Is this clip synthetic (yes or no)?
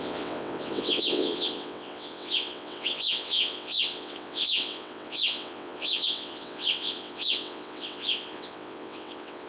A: yes